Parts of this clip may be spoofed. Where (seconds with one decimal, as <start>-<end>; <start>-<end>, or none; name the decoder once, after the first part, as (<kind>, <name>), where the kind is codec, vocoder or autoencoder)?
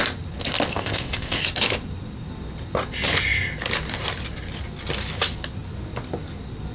0.7-1.4 (codec, ZipCodec)